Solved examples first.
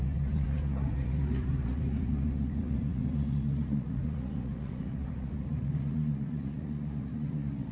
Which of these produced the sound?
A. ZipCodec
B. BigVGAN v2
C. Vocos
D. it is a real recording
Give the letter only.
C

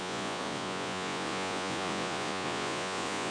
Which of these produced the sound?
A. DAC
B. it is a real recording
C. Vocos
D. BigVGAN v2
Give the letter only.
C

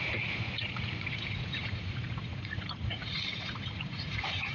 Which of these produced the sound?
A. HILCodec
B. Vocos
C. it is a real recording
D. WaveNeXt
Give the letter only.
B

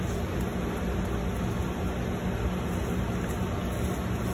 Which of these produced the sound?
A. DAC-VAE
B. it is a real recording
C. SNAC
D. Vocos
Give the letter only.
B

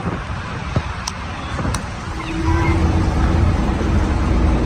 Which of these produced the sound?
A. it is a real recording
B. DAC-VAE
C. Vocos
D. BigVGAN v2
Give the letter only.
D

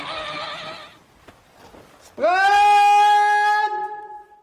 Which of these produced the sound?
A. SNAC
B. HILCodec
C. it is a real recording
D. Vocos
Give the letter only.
C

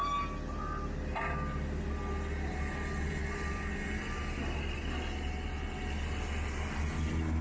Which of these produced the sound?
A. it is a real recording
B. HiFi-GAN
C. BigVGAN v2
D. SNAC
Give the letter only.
A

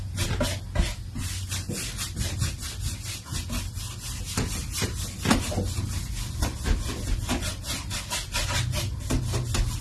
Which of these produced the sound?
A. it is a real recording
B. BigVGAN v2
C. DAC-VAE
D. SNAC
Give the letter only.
A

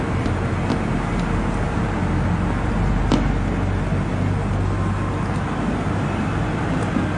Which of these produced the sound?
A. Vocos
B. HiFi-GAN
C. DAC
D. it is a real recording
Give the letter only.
D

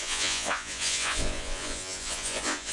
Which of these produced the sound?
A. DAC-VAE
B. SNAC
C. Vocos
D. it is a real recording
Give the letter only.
C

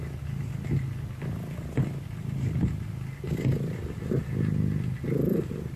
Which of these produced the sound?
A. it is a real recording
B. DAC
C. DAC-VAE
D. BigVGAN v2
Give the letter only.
A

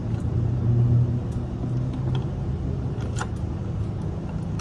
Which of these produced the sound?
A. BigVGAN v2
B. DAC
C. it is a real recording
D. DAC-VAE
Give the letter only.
C